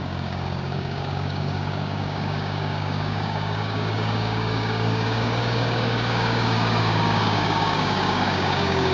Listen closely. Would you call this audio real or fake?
fake